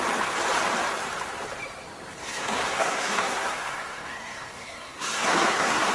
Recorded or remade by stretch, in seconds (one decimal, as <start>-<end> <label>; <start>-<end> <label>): 0.0-2.2 recorded; 2.2-5.9 remade